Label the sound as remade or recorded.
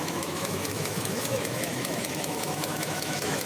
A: remade